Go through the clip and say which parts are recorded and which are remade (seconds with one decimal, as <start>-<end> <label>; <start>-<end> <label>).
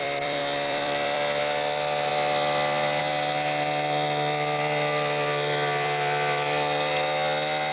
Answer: 0.0-2.1 remade; 2.1-3.0 recorded; 3.0-7.7 remade